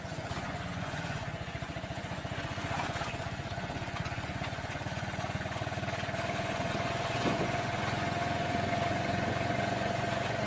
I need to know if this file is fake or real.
fake